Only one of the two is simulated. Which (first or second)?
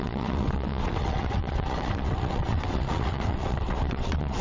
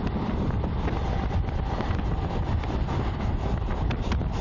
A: first